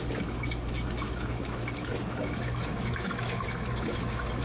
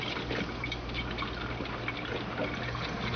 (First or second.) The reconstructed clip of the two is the first